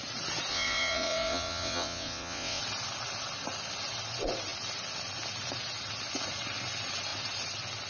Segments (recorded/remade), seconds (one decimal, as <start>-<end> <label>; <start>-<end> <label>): 0.0-0.5 recorded; 0.5-2.6 remade; 2.6-7.9 recorded